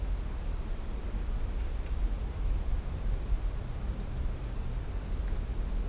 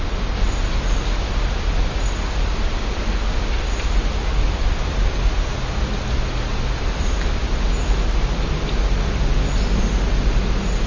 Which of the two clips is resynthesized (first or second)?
first